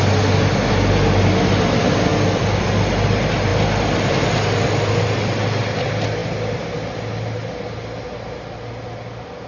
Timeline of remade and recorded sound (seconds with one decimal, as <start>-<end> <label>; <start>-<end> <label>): 0.0-2.1 recorded; 2.1-2.6 remade; 2.6-3.5 recorded; 3.5-4.2 remade; 4.2-9.5 recorded